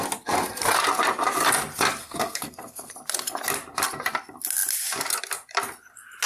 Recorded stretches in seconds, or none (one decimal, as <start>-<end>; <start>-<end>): 0.0-2.0; 2.9-6.3